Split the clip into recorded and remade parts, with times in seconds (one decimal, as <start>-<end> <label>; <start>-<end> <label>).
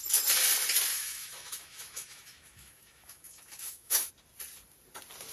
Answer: 0.0-0.9 recorded; 0.9-4.1 remade; 4.1-5.3 recorded